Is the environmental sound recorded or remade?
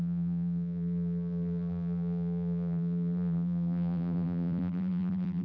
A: remade